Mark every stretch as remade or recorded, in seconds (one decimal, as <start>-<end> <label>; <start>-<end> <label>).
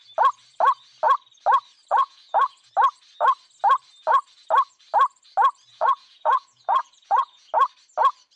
0.0-1.9 recorded; 1.9-2.7 remade; 2.7-5.7 recorded; 5.7-7.5 remade; 7.5-8.4 recorded